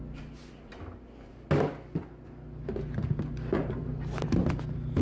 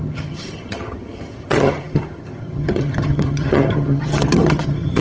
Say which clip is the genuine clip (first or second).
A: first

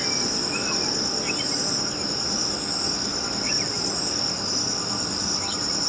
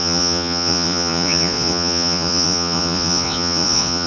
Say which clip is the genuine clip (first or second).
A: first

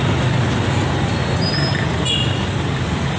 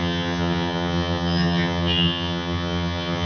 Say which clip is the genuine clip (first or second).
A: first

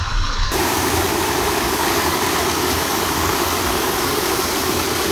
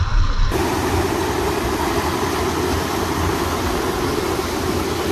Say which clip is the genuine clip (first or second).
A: second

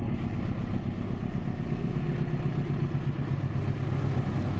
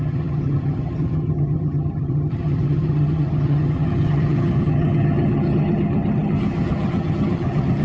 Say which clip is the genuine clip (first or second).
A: first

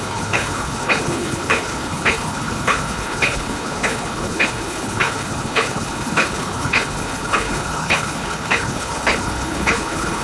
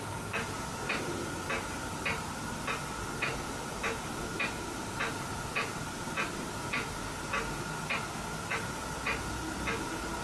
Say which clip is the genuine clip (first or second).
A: second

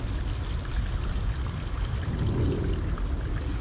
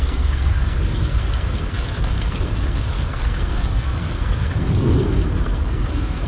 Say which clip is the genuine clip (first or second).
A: first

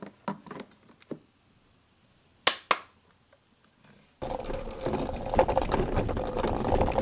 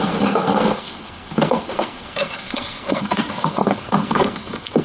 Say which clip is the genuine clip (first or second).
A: first